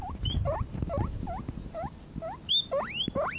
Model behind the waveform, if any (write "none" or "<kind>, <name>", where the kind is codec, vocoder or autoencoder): none